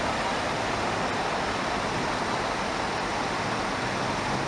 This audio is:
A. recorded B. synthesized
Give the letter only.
A